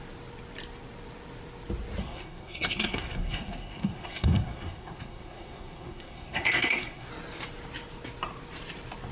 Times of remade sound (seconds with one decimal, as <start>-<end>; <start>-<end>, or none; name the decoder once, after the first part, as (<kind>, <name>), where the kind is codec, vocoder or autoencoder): 2.0-7.1 (codec, SNAC)